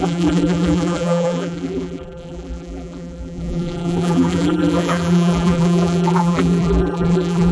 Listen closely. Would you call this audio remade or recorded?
remade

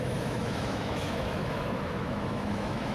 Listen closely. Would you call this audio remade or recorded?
remade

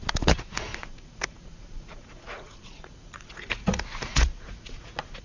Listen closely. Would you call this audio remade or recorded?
remade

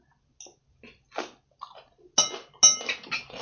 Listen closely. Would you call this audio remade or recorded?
recorded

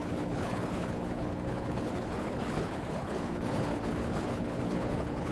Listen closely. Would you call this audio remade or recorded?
remade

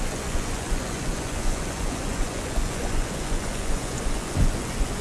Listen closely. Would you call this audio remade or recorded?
remade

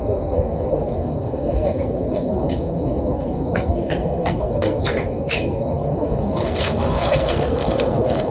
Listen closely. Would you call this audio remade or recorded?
remade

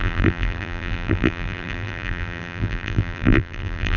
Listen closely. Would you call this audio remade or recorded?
remade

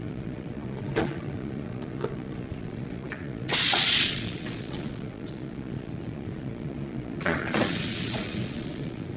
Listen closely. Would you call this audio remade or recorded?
remade